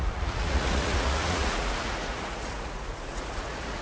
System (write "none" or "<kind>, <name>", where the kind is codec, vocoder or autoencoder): vocoder, Vocos